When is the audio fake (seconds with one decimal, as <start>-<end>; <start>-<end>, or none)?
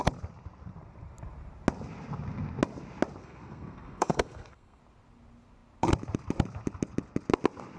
3.2-4.8